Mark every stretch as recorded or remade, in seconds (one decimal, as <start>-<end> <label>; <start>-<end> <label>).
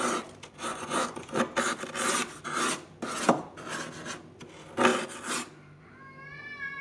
0.0-0.7 recorded; 0.7-1.4 remade; 1.4-6.8 recorded